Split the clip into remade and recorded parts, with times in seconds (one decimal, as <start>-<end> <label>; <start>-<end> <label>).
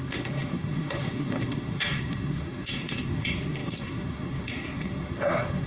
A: 0.0-5.7 remade